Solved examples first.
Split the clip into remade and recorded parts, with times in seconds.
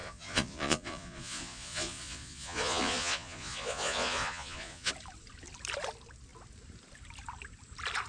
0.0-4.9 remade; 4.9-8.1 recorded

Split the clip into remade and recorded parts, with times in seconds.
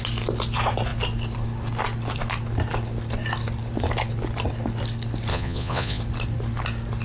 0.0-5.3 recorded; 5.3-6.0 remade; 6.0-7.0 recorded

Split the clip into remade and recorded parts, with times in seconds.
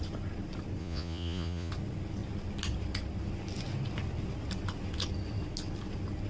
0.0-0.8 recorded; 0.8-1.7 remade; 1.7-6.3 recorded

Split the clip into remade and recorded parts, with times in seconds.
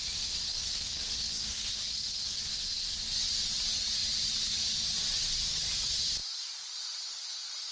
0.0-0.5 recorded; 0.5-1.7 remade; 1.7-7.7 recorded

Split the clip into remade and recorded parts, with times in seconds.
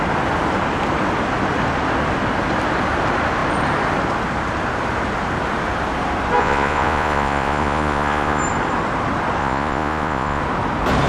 0.0-6.4 recorded; 6.4-8.4 remade; 8.4-9.4 recorded; 9.4-10.4 remade; 10.4-11.1 recorded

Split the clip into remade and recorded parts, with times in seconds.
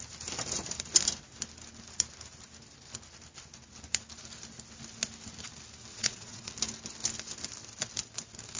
0.0-5.9 recorded; 5.9-6.5 remade; 6.5-8.6 recorded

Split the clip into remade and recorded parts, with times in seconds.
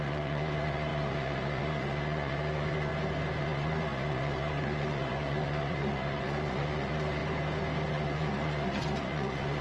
0.0-2.9 remade; 2.9-3.4 recorded; 3.4-7.2 remade; 7.2-7.9 recorded; 7.9-9.6 remade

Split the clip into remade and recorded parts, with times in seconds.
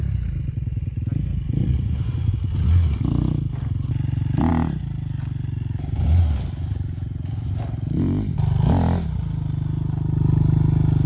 0.0-1.6 recorded; 1.6-2.3 remade; 2.3-11.1 recorded